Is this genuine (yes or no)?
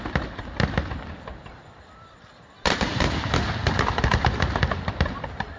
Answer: yes